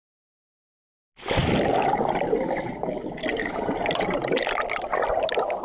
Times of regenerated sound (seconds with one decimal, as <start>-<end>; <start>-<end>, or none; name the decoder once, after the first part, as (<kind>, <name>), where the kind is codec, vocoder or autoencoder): none